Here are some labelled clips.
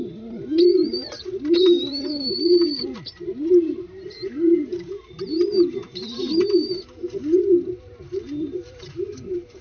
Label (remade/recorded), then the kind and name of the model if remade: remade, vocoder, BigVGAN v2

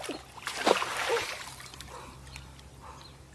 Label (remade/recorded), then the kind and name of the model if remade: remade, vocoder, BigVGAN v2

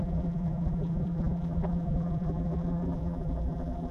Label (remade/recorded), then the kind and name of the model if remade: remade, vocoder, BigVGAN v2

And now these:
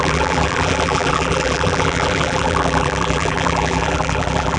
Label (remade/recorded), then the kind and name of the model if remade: remade, vocoder, BigVGAN v2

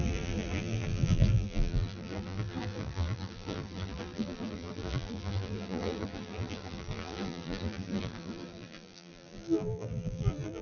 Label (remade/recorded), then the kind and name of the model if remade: remade, vocoder, BigVGAN v2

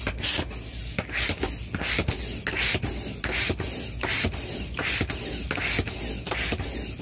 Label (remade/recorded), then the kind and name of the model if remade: recorded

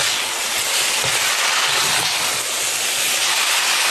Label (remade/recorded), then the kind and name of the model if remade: recorded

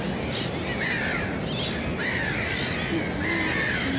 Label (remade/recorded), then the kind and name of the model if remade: recorded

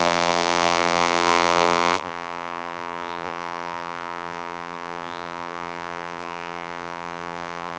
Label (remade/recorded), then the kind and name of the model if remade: remade, vocoder, BigVGAN v2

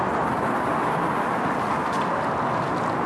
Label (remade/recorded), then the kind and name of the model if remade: recorded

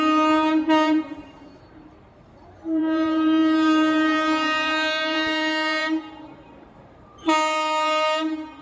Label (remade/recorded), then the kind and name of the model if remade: remade, vocoder, BigVGAN v2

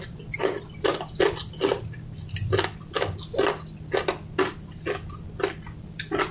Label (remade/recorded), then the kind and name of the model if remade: recorded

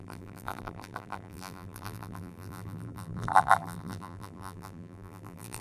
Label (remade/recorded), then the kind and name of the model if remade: remade, vocoder, BigVGAN v2